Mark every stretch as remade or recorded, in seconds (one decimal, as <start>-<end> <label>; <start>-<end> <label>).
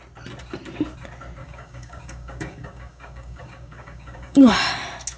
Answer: 0.0-1.4 recorded; 1.4-4.5 remade; 4.5-5.2 recorded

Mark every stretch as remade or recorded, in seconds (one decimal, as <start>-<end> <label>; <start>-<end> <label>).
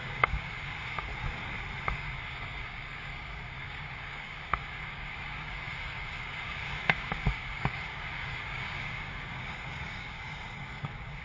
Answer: 0.0-1.1 remade; 1.1-1.9 recorded; 1.9-11.2 remade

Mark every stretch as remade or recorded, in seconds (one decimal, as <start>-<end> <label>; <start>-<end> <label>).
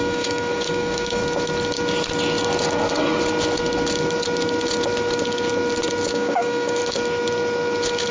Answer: 0.0-1.2 remade; 1.2-6.1 recorded; 6.1-6.8 remade; 6.8-8.1 recorded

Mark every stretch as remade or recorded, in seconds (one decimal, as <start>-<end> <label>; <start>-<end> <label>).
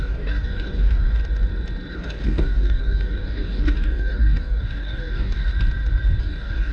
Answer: 0.0-1.2 remade; 1.2-1.9 recorded; 1.9-5.5 remade; 5.5-6.2 recorded; 6.2-6.7 remade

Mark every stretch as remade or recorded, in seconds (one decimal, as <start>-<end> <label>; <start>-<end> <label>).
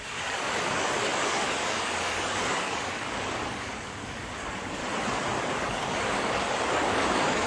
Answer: 0.0-4.8 remade; 4.8-5.4 recorded; 5.4-7.5 remade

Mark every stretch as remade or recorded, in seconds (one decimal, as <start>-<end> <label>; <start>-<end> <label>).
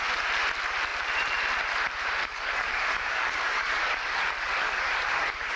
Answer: 0.0-2.2 recorded; 2.2-5.6 remade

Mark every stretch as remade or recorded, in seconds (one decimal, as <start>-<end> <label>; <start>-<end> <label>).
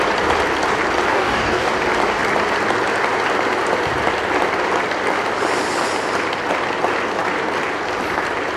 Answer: 0.0-1.1 recorded; 1.1-1.7 remade; 1.7-8.6 recorded